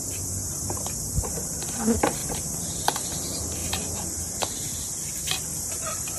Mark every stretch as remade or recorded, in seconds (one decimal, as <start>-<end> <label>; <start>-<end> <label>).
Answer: 0.0-2.2 recorded; 2.2-3.0 remade; 3.0-3.6 recorded; 3.6-4.4 remade; 4.4-5.5 recorded; 5.5-6.2 remade